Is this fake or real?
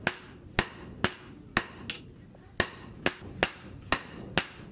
real